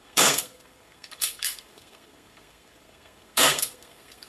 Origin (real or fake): fake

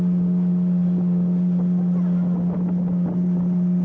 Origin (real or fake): real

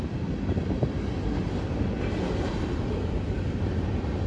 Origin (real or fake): real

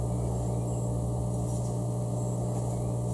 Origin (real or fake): real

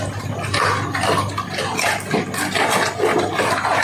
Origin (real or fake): real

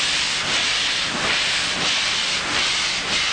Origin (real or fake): real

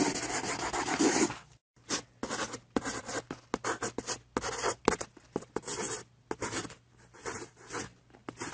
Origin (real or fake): real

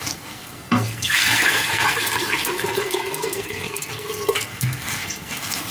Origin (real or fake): fake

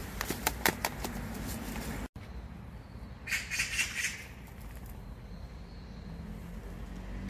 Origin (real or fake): real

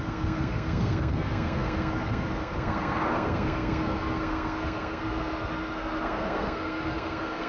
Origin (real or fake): fake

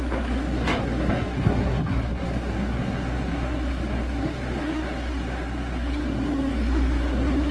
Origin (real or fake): fake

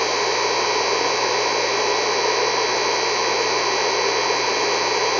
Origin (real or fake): real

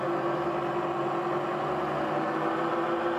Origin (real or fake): real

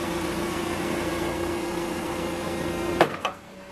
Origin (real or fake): fake